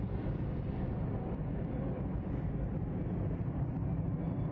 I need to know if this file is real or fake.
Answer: fake